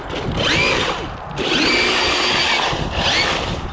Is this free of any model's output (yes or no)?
yes